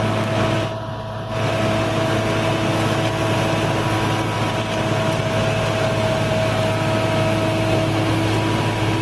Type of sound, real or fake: real